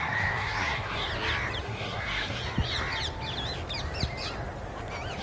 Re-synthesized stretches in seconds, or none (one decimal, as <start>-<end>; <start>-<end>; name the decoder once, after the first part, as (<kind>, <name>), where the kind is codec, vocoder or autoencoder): 0.0-1.1 (codec, SNAC); 1.6-2.4